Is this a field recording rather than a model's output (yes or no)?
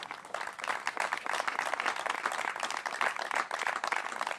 yes